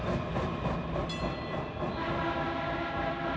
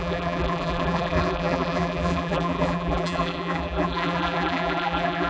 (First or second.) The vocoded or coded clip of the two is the second